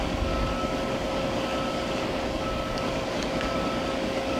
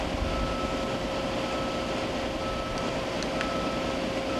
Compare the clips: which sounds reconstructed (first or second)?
first